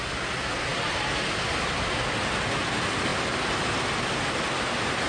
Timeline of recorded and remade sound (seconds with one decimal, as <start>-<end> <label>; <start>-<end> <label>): 0.0-5.1 recorded